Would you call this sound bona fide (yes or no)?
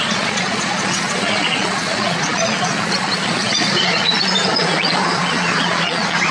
no